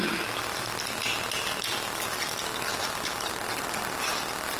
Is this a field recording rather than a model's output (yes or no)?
yes